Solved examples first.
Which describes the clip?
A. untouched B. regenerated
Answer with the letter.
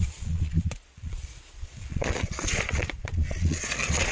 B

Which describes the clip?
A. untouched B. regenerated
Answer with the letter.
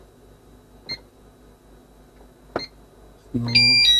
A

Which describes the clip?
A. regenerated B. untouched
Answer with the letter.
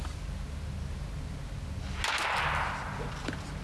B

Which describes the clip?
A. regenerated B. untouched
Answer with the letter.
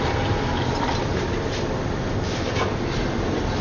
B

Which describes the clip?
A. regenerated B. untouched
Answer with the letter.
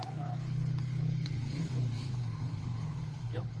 A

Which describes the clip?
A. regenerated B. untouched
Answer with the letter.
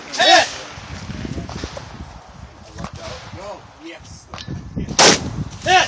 B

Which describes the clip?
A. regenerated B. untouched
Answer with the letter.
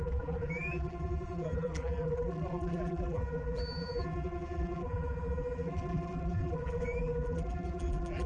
A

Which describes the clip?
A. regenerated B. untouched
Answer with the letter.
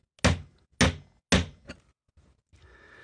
B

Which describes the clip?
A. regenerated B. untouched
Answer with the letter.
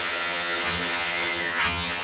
A